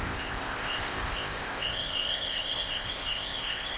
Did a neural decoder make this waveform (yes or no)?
yes